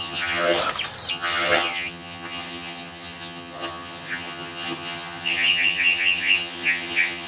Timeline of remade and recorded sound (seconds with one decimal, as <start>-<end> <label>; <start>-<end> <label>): 0.0-0.6 remade; 0.6-1.1 recorded; 1.1-7.3 remade